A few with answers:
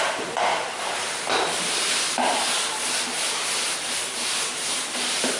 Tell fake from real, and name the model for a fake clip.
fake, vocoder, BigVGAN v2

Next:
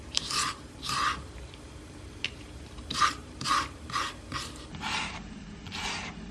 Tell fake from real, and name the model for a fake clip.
fake, vocoder, BigVGAN v2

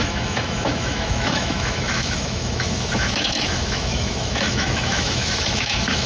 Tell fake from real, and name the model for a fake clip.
fake, autoencoder, DAC-VAE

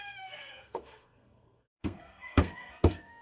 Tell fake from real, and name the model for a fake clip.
fake, codec, SNAC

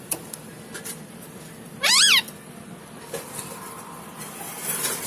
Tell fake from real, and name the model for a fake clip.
real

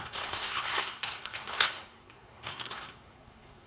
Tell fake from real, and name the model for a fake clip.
fake, codec, SNAC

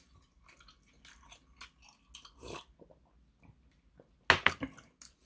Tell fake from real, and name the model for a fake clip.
real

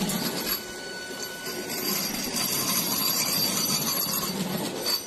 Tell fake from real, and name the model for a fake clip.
real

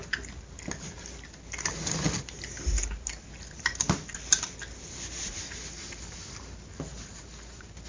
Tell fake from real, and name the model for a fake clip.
real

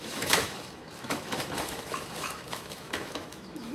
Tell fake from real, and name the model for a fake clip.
fake, autoencoder, DAC-VAE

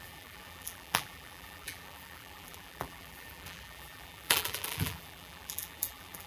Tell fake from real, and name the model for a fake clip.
fake, vocoder, BigVGAN v2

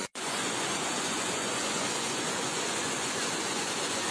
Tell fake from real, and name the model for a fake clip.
fake, vocoder, Vocos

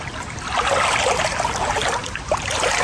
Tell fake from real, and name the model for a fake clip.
real